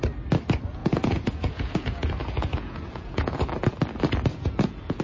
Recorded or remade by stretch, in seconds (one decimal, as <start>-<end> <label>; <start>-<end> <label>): 0.0-0.8 recorded; 0.8-3.4 remade; 3.4-4.3 recorded; 4.3-5.0 remade